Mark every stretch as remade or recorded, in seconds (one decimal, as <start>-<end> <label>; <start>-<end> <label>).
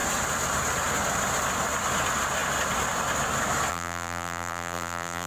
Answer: 0.0-3.7 recorded; 3.7-5.3 remade